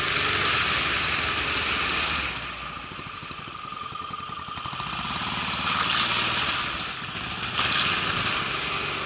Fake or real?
real